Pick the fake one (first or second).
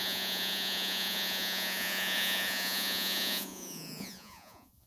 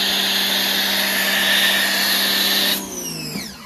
first